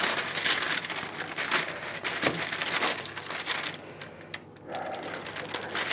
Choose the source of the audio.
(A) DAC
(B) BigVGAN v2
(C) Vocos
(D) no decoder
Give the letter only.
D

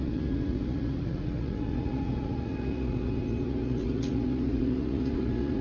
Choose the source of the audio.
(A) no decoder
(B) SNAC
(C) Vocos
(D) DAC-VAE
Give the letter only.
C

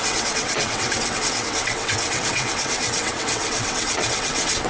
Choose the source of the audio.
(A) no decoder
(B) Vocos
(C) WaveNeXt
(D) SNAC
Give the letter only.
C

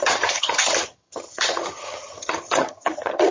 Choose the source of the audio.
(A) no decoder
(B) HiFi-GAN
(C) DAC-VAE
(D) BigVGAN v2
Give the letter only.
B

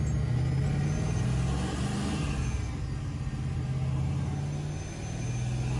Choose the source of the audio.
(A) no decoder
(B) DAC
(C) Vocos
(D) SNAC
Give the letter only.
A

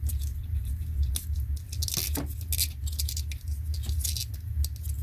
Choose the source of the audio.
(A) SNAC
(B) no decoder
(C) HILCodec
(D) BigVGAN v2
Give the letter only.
B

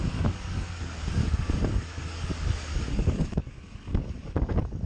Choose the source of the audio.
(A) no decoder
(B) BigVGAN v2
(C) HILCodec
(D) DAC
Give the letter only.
D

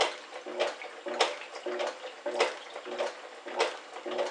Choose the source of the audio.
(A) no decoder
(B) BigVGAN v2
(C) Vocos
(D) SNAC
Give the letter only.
A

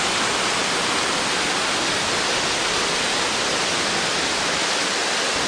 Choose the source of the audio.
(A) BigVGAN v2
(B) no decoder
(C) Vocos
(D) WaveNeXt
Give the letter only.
B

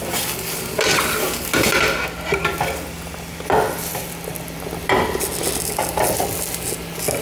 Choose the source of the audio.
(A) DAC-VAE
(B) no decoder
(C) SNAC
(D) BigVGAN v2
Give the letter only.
B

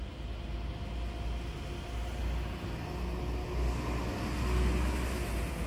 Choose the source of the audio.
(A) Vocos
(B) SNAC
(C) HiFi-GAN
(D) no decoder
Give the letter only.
D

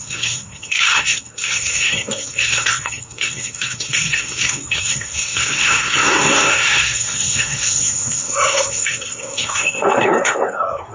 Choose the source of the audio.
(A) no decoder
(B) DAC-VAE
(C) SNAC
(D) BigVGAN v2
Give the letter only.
C